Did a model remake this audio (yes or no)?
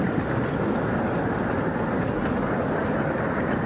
no